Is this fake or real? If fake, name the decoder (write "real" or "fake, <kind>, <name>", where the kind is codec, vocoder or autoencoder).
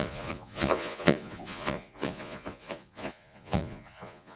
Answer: fake, vocoder, Vocos